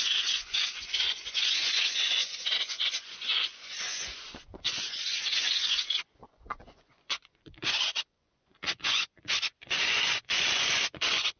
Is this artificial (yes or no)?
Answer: yes